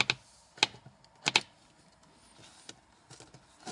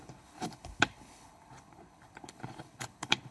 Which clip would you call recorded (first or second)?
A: first